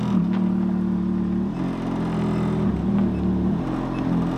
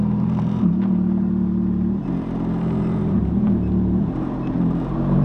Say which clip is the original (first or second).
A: first